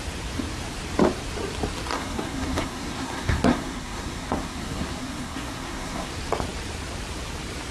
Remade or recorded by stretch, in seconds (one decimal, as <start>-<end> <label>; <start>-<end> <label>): 0.0-1.9 recorded; 1.9-6.1 remade; 6.1-7.7 recorded